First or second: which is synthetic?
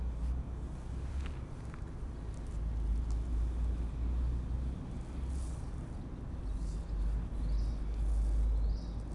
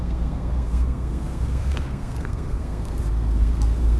second